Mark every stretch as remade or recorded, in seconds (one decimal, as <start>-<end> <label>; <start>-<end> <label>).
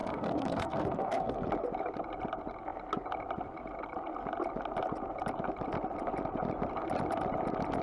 0.0-1.5 remade; 1.5-7.8 recorded